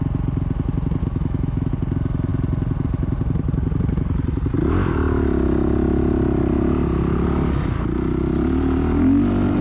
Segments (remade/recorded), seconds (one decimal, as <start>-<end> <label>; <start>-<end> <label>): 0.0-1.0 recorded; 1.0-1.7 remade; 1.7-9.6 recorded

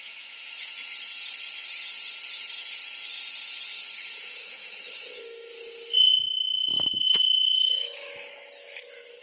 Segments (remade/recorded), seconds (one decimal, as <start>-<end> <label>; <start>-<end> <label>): 0.0-0.7 remade; 0.7-4.2 recorded; 4.2-5.5 remade; 5.5-6.8 recorded; 6.8-9.2 remade

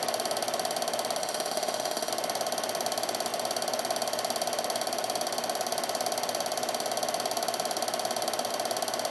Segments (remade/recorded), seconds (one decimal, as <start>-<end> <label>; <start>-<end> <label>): 0.0-1.2 recorded; 1.2-2.1 remade; 2.1-9.1 recorded

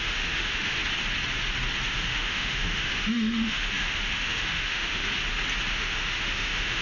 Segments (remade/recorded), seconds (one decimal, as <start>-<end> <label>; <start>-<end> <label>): 0.0-0.8 remade; 0.8-1.9 recorded; 1.9-5.0 remade; 5.0-5.7 recorded; 5.7-6.8 remade

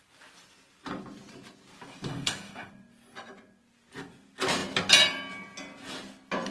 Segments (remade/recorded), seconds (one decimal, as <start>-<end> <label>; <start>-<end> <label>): 0.0-2.1 recorded; 2.1-2.7 remade; 2.7-6.5 recorded

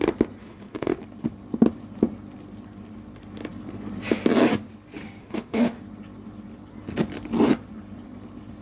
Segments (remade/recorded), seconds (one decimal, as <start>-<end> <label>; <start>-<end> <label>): 0.0-0.4 recorded; 0.4-1.0 remade; 1.0-5.2 recorded; 5.2-5.8 remade; 5.8-8.6 recorded

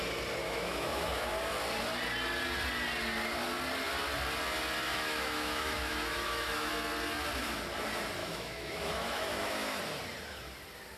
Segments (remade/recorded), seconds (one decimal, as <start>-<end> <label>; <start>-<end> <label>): 0.0-0.4 recorded; 0.4-1.3 remade; 1.3-4.9 recorded; 4.9-6.7 remade; 6.7-8.2 recorded; 8.2-9.8 remade; 9.8-11.0 recorded